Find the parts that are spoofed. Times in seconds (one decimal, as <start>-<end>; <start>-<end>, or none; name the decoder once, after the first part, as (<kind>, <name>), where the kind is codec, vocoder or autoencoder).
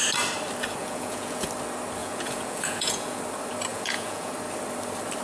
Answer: 0.8-1.5 (vocoder, Vocos); 2.0-3.2; 3.7-4.3